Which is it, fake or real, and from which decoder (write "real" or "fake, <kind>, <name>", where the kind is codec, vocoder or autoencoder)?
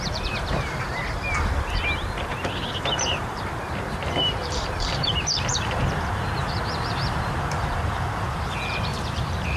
fake, vocoder, BigVGAN v2